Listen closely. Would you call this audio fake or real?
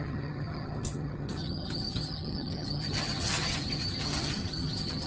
fake